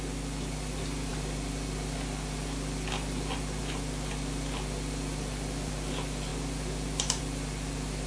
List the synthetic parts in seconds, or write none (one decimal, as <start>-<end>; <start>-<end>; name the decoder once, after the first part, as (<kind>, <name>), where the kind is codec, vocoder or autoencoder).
none